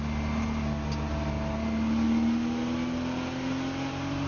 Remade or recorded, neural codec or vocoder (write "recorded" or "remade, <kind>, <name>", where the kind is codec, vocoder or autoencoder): recorded